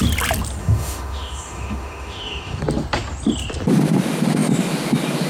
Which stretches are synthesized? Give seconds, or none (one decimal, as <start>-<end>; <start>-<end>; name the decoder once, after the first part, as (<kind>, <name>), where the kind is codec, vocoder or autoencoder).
0.6-2.6 (autoencoder, DAC-VAE)